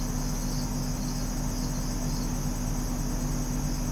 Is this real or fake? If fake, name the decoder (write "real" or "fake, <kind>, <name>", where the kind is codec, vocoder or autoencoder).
real